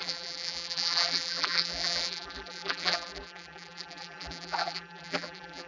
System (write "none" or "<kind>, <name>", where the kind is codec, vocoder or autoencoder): vocoder, BigVGAN v2